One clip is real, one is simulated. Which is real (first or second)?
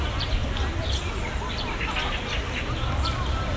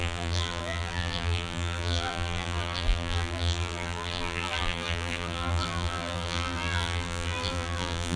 first